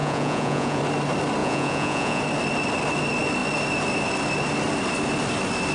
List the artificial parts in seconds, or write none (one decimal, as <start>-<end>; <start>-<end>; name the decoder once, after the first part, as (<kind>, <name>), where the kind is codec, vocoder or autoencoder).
0.0-0.8 (vocoder, Vocos); 1.4-2.2